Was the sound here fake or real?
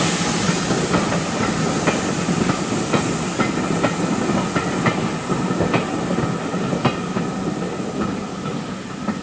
real